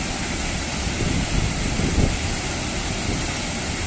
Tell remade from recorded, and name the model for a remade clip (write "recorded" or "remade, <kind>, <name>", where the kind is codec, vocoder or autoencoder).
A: recorded